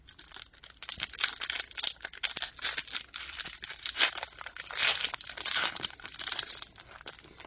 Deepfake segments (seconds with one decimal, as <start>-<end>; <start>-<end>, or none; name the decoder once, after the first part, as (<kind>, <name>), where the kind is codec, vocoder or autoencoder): 4.8-5.9 (vocoder, BigVGAN v2)